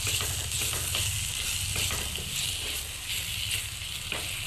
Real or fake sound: real